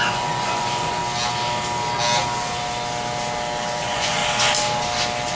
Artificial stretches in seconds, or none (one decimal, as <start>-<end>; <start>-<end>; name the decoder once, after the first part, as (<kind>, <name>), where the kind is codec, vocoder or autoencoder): 0.0-1.0 (vocoder, Vocos); 3.8-4.2